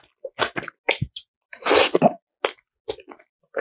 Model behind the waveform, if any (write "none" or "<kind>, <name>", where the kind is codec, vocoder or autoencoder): none